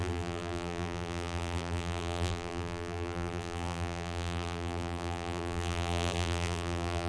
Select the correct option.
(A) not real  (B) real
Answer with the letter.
A